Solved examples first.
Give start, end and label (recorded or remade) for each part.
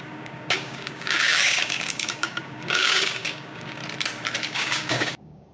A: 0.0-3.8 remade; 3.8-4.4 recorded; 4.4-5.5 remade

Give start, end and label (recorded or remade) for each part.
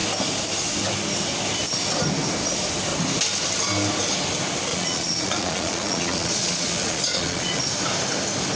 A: 0.0-4.7 recorded; 4.7-7.6 remade; 7.6-8.6 recorded